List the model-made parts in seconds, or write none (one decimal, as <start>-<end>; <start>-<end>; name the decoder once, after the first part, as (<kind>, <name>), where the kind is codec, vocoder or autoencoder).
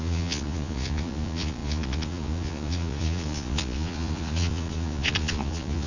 0.0-5.9 (vocoder, Vocos)